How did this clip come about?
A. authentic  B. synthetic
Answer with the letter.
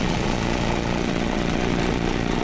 B